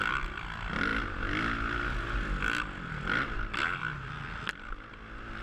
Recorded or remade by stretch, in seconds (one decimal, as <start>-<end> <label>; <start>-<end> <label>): 0.0-5.4 recorded